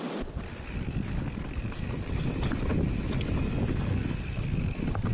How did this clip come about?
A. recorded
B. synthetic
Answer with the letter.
A